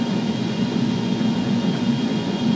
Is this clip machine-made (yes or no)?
yes